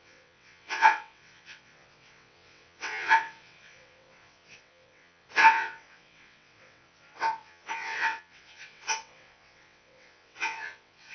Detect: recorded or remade remade